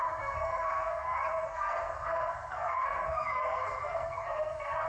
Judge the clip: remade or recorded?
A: remade